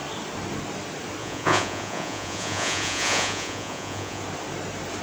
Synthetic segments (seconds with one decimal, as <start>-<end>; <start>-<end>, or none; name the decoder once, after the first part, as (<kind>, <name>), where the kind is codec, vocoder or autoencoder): 1.2-4.2 (vocoder, Vocos)